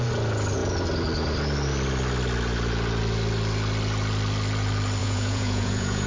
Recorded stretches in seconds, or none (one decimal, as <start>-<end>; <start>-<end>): 0.0-5.0